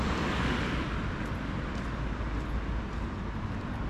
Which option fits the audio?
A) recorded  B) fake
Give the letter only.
A